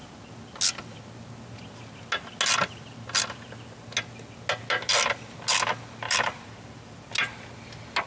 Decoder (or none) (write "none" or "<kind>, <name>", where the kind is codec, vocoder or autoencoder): none